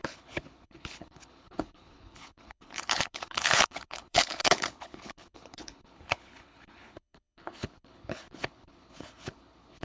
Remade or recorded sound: remade